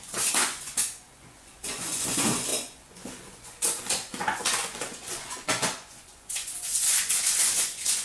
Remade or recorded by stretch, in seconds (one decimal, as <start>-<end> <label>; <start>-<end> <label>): 0.0-8.0 remade